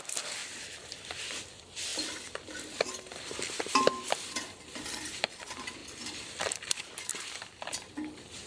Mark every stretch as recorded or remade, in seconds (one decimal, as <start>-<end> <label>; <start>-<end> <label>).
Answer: 0.0-0.4 remade; 0.4-1.2 recorded; 1.2-8.5 remade